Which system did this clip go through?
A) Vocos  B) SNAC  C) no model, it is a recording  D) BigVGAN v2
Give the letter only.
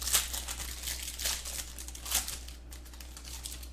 C